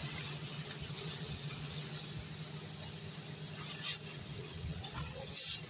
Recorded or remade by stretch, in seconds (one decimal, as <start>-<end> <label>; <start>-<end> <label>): 0.0-2.0 remade; 2.0-4.1 recorded; 4.1-5.3 remade; 5.3-5.7 recorded